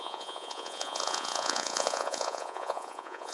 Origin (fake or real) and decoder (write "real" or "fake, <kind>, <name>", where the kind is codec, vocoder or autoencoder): fake, vocoder, Vocos